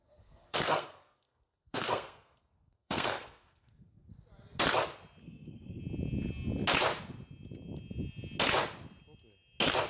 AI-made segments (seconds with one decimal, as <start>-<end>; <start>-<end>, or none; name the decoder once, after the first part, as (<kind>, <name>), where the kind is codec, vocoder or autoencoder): 0.0-4.1 (codec, SNAC); 5.2-5.8